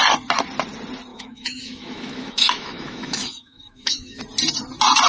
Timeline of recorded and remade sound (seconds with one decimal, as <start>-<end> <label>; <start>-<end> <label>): 0.0-1.1 recorded; 1.1-4.2 remade; 4.2-5.1 recorded